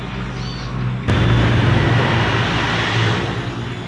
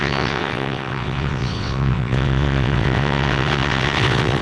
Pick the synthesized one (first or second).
second